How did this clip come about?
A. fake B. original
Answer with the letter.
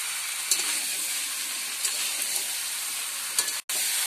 B